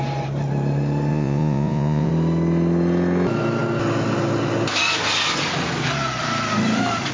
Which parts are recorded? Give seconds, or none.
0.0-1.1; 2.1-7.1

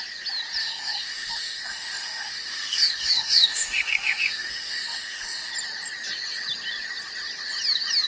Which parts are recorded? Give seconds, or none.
0.0-0.6; 5.5-8.1

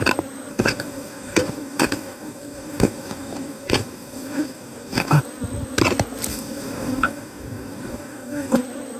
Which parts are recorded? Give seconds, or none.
0.0-0.5; 5.2-6.3; 8.6-9.0

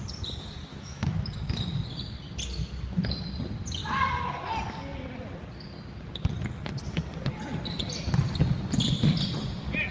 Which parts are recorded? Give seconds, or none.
0.0-0.7; 1.5-9.9

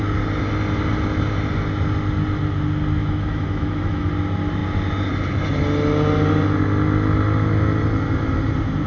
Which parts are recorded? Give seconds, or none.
0.0-3.0; 4.1-8.9

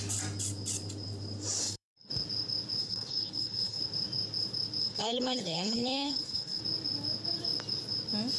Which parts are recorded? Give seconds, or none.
0.0-1.6; 2.1-2.8; 3.8-4.8; 6.6-8.4

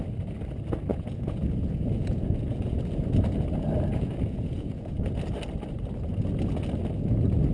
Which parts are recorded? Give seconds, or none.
0.0-0.9; 2.8-3.9; 4.9-7.5

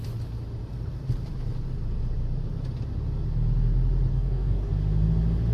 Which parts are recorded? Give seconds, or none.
0.0-4.1; 4.7-5.5